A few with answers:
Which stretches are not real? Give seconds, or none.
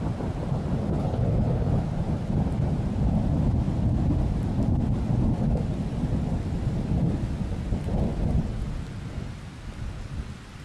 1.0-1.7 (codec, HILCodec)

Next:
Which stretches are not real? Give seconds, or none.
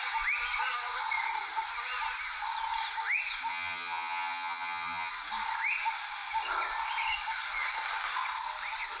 3.5-5.1 (vocoder, HiFi-GAN)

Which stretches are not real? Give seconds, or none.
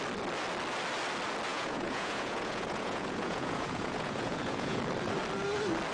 1.5-4.8 (vocoder, Vocos)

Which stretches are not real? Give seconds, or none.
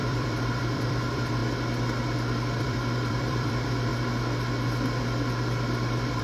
0.0-1.4 (vocoder, BigVGAN v2); 2.6-3.9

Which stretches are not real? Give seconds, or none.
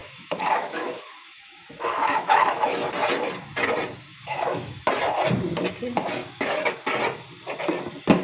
0.0-2.9 (autoencoder, DAC-VAE); 4.1-4.9; 6.2-6.7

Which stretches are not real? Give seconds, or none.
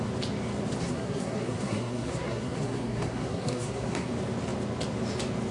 0.8-4.1 (codec, SNAC)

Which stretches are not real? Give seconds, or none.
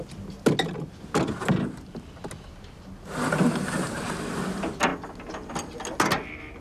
none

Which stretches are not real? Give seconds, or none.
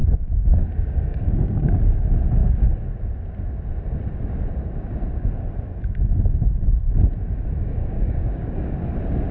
0.0-1.7 (codec, DAC); 7.8-8.7